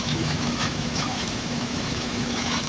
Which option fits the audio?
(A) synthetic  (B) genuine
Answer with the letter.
A